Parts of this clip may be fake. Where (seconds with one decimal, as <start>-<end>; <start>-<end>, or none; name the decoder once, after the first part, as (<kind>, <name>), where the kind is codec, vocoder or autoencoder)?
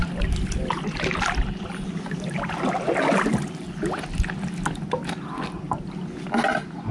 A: none